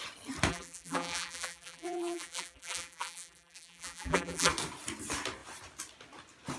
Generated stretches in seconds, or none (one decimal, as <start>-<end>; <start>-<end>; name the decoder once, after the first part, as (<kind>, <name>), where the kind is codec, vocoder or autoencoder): 0.5-4.5 (vocoder, BigVGAN v2)